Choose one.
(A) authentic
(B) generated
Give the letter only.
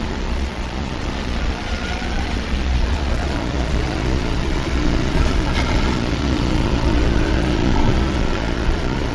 B